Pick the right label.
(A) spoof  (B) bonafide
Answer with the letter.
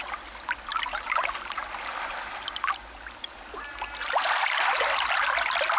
B